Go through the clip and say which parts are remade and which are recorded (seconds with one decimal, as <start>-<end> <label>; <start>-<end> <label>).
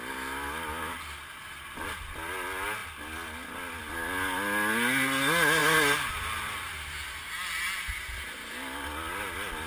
0.0-9.7 recorded